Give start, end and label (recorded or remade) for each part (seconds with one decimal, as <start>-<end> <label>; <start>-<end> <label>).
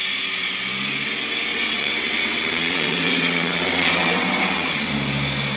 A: 0.0-1.5 recorded; 1.5-4.9 remade; 4.9-5.6 recorded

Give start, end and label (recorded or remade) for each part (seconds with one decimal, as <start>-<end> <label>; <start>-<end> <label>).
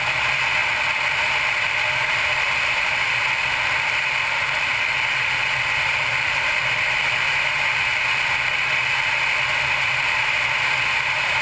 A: 0.0-11.4 recorded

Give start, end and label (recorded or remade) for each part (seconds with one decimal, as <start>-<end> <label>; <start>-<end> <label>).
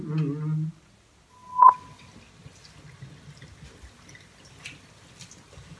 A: 0.0-1.3 recorded; 1.3-2.1 remade; 2.1-5.8 recorded